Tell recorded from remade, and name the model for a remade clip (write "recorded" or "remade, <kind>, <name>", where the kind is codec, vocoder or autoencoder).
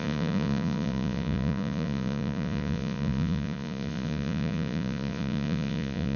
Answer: remade, vocoder, Vocos